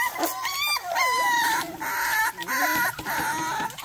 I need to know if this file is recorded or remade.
remade